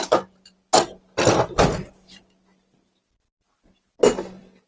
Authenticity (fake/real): real